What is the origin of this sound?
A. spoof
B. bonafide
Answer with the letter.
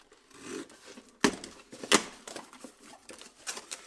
B